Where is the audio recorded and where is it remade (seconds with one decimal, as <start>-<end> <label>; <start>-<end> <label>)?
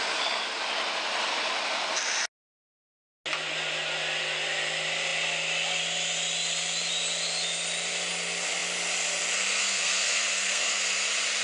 0.0-9.6 recorded; 9.6-10.8 remade; 10.8-11.4 recorded